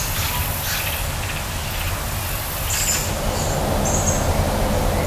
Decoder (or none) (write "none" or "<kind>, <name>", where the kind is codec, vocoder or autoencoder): none